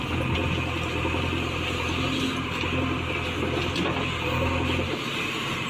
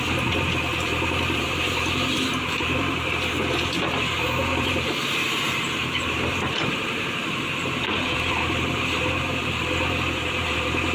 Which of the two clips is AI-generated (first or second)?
second